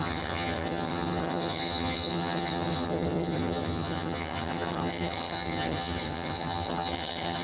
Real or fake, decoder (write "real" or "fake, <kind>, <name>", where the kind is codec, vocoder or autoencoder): fake, vocoder, HiFi-GAN